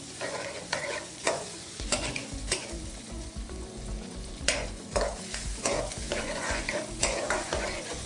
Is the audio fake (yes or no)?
yes